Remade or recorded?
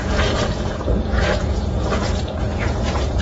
remade